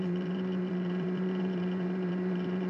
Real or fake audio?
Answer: fake